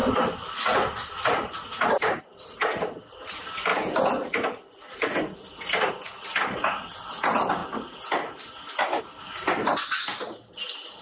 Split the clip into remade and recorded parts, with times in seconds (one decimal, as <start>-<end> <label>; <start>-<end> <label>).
0.0-11.0 recorded